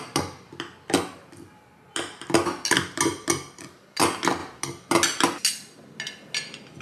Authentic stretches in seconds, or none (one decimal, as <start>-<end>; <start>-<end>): 0.0-6.8

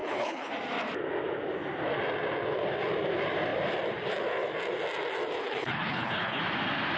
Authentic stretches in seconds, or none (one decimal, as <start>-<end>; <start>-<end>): 0.5-5.4; 6.4-7.0

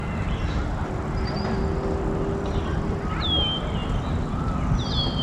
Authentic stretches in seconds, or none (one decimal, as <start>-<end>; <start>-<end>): 0.0-5.2

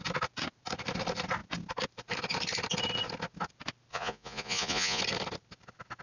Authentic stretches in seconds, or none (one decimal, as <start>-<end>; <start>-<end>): 0.0-3.9; 5.0-6.0

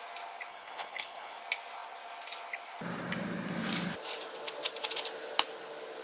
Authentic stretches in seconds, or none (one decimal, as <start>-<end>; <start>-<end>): 0.0-0.5; 1.4-6.0

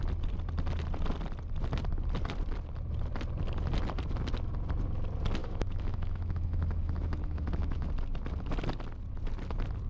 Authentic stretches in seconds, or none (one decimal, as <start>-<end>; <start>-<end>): 0.0-5.4; 7.9-9.9